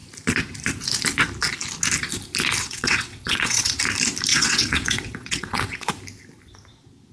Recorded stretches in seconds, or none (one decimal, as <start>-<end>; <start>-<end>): 0.0-2.6; 3.8-4.3; 5.9-7.1